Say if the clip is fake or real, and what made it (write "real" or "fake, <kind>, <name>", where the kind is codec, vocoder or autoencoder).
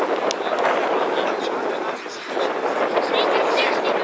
real